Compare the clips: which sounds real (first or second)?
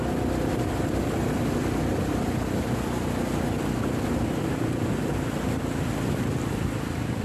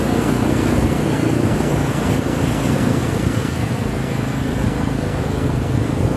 first